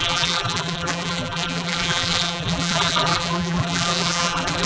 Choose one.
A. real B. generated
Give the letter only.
B